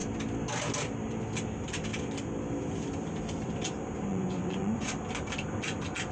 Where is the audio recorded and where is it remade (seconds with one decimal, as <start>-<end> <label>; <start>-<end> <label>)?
0.0-4.1 recorded; 4.1-4.9 remade; 4.9-6.1 recorded